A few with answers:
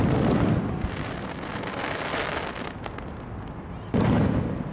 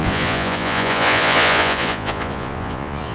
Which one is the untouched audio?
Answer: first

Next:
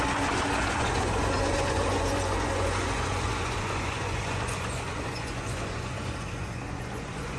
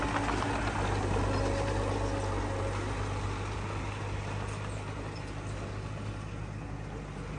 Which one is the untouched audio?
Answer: second